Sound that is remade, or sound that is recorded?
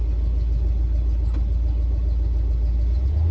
recorded